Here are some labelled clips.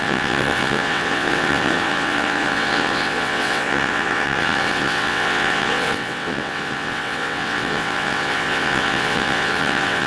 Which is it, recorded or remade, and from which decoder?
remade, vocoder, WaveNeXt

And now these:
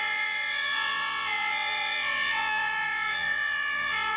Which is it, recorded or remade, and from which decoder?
remade, vocoder, WaveNeXt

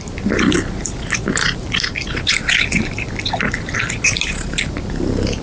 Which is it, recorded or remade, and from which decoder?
recorded